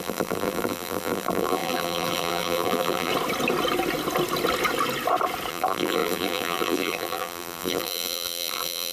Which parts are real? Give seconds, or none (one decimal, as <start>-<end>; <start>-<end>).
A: 3.1-5.5